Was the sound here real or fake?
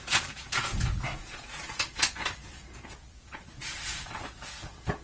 fake